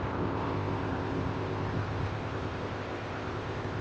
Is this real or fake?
fake